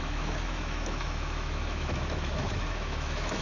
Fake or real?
fake